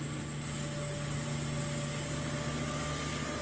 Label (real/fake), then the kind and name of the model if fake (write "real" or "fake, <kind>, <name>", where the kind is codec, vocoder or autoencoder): real